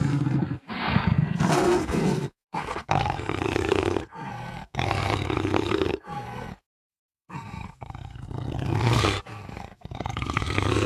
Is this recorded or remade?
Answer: remade